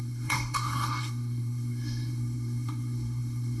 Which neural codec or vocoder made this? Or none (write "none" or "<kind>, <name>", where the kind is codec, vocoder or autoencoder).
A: codec, SNAC